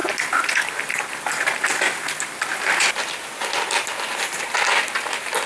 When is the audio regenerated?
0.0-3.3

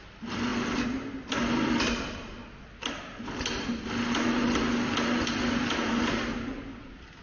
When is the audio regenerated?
0.0-0.5; 1.3-2.4; 5.9-7.2